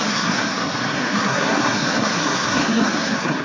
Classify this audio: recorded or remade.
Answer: remade